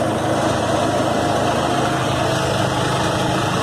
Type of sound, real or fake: real